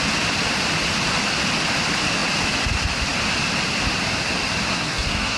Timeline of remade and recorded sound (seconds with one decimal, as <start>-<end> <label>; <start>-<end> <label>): 0.0-4.7 recorded; 4.7-5.4 remade